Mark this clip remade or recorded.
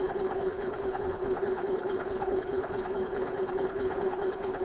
remade